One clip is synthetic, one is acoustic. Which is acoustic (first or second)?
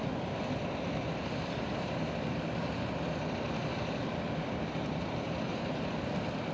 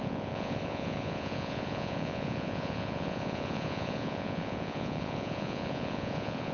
first